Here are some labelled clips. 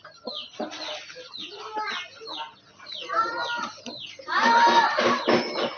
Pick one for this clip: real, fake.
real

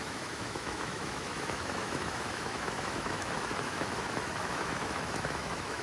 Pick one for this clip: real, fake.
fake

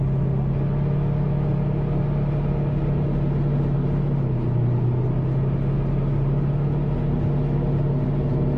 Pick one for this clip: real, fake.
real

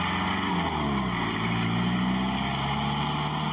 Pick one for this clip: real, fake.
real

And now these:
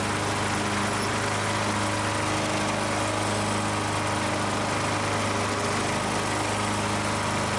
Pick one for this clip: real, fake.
real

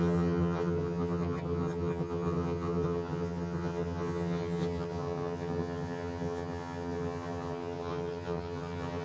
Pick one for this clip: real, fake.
fake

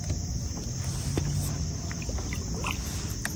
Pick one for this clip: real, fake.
real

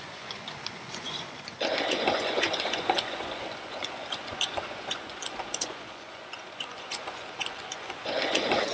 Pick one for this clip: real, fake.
fake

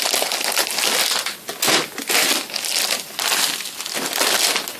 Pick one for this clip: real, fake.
real